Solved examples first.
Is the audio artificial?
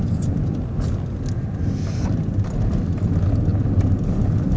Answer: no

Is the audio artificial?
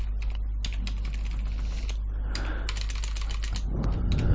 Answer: no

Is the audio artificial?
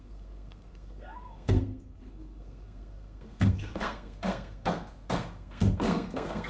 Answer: yes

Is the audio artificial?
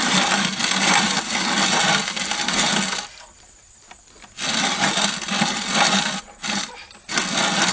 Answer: no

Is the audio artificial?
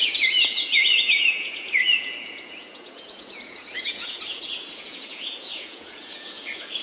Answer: yes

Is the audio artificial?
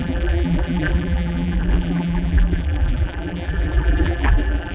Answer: yes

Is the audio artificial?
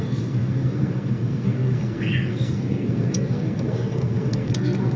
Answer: yes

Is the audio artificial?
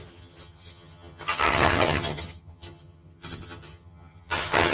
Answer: yes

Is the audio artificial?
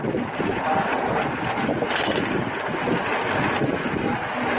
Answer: no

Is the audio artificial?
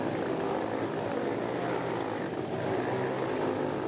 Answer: no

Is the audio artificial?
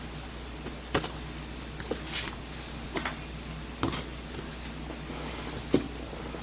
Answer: no